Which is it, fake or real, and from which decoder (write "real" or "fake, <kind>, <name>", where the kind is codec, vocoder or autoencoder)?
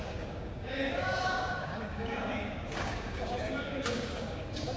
fake, codec, DAC